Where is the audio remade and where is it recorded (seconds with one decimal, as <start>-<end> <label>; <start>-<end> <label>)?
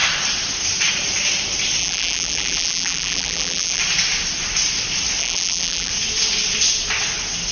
0.0-1.8 recorded; 1.8-3.8 remade; 3.8-5.2 recorded; 5.2-5.9 remade; 5.9-7.5 recorded